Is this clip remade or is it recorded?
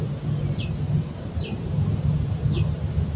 recorded